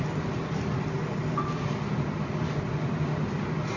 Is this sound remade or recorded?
recorded